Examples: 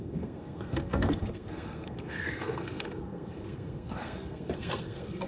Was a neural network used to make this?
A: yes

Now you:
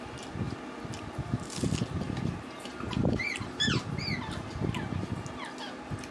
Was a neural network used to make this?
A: no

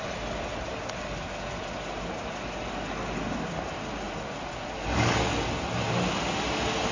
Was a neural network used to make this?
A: no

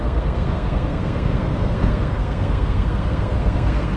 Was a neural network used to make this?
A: yes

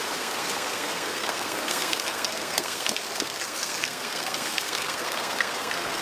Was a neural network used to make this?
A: yes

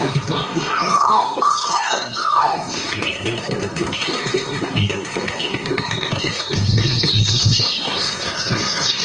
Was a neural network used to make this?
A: yes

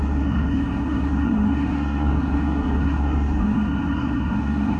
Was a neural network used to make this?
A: yes